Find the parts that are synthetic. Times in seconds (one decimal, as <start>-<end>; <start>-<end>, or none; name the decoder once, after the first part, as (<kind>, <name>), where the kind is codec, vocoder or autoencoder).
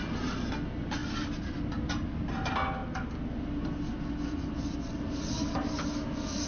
none